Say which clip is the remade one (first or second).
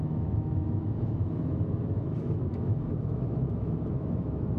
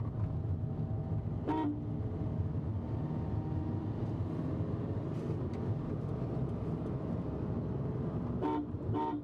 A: first